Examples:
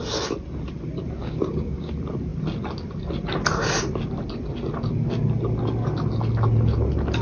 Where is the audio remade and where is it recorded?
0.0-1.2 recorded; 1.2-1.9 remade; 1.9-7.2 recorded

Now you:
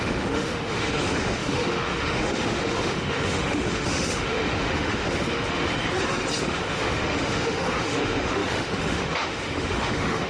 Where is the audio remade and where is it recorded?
0.0-5.7 remade; 5.7-6.4 recorded; 6.4-10.3 remade

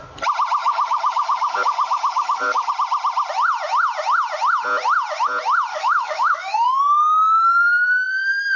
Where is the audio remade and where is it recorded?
0.0-0.6 recorded; 0.6-2.7 remade; 2.7-5.7 recorded; 5.7-6.8 remade; 6.8-8.6 recorded

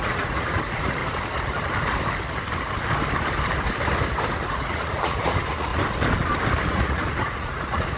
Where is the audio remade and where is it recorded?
0.0-1.0 remade; 1.0-4.4 recorded; 4.4-5.7 remade; 5.7-6.7 recorded; 6.7-8.0 remade

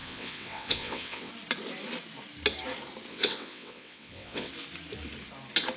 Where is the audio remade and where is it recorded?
0.0-1.3 remade; 1.3-3.1 recorded; 3.1-4.5 remade; 4.5-5.8 recorded

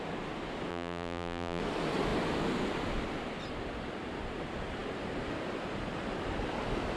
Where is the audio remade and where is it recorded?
0.0-0.7 recorded; 0.7-1.6 remade; 1.6-7.0 recorded

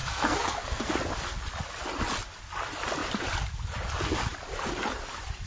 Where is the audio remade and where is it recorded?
0.0-0.9 remade; 0.9-5.5 recorded